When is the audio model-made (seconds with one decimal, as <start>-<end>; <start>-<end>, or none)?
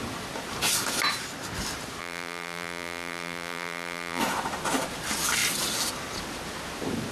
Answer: 2.0-4.2